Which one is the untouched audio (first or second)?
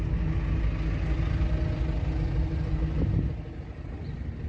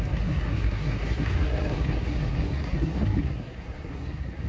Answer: first